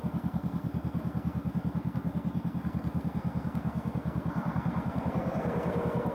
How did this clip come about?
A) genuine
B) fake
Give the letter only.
B